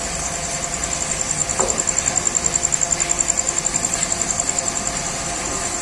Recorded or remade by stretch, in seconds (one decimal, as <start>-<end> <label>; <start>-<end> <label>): 0.0-5.8 recorded